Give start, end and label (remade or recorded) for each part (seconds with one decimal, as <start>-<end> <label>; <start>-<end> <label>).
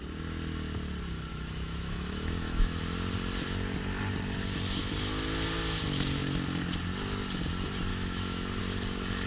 0.0-1.3 recorded; 1.3-2.8 remade; 2.8-7.9 recorded; 7.9-8.6 remade; 8.6-9.3 recorded